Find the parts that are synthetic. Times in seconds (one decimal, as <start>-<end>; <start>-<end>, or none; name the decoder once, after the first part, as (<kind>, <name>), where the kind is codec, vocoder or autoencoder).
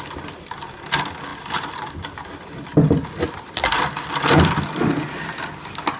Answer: none